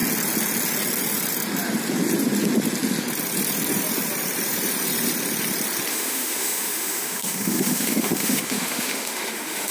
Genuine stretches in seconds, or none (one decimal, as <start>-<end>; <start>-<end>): 0.0-5.9